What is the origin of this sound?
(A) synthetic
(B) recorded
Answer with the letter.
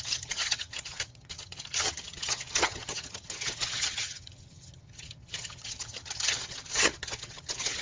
A